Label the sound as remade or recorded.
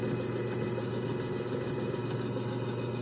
recorded